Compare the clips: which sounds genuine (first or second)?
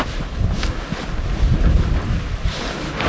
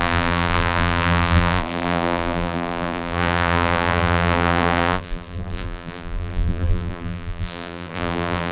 first